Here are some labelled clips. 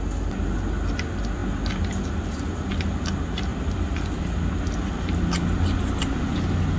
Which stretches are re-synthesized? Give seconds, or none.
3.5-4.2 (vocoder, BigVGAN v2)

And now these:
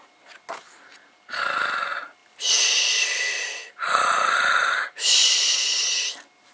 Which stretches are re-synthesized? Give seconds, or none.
none

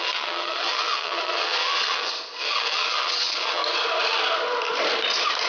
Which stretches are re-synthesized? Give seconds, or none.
0.0-3.6 (vocoder, WaveNeXt)

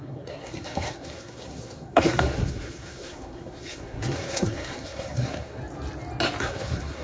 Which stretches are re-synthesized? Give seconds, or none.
0.0-5.6 (codec, SNAC); 6.4-7.0

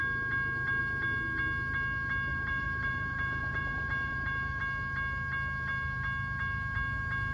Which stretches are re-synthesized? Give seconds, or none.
2.3-4.6 (vocoder, BigVGAN v2)

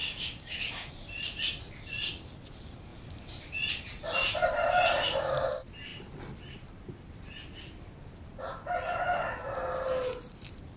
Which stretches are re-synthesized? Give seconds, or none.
0.0-0.9 (codec, DAC)

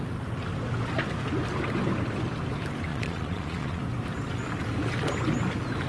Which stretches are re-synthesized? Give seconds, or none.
2.9-3.8 (vocoder, Vocos)